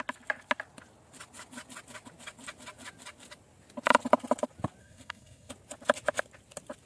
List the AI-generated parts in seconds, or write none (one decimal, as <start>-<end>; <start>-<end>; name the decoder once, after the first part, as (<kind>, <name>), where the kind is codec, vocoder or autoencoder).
4.8-5.5 (codec, SNAC)